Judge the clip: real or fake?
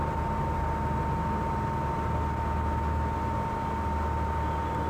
real